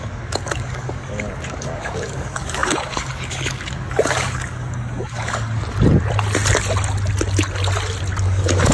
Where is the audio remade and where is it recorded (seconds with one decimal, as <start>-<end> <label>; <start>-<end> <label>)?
0.0-5.6 remade; 5.6-8.2 recorded; 8.2-8.7 remade